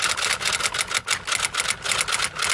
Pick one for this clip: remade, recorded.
recorded